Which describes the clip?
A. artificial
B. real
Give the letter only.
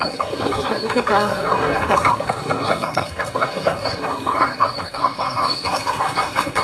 A